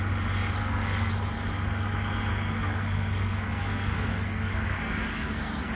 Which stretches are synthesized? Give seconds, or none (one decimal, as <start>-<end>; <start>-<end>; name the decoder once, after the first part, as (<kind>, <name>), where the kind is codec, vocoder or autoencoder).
0.6-1.1 (codec, SNAC); 2.3-5.7